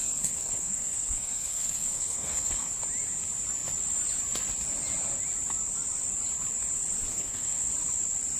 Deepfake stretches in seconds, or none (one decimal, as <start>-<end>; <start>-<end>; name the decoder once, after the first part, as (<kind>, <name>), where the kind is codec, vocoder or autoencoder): 0.0-2.7 (codec, SNAC); 7.1-7.7